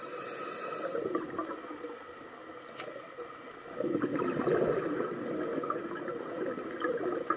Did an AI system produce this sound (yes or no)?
no